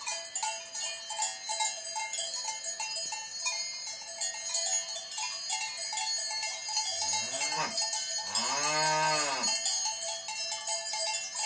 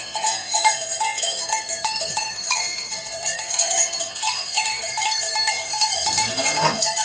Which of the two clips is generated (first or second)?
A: second